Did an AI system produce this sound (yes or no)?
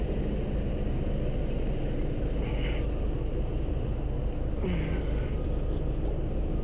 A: no